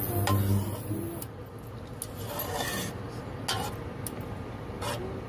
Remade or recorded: recorded